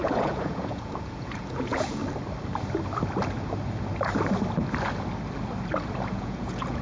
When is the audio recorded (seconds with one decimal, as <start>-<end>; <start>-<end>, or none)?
2.0-6.1